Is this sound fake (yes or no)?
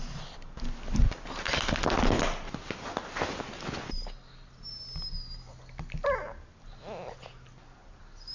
no